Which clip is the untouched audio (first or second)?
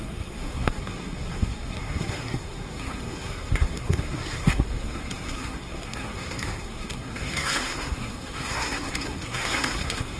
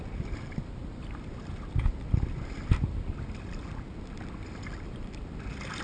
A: second